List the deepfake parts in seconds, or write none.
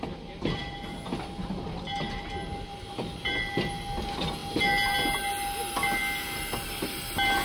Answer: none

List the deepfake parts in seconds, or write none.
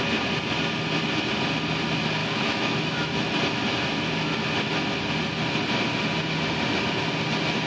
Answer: 2.2-3.4 (autoencoder, DAC-VAE)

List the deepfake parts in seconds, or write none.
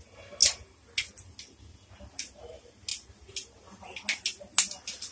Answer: none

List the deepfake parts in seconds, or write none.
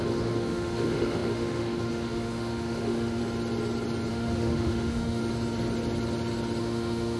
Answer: 0.0-3.2 (autoencoder, DAC-VAE); 4.1-5.2; 6.6-7.2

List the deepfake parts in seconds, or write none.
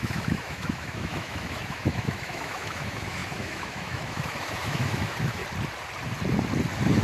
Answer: 0.0-5.4 (autoencoder, DAC-VAE)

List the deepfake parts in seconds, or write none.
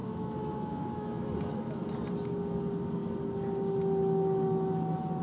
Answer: 0.0-1.9 (autoencoder, DAC-VAE)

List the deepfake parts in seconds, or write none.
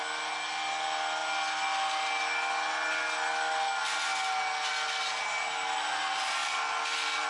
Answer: none